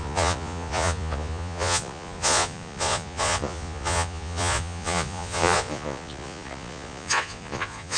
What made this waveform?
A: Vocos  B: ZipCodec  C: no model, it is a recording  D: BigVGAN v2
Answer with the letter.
A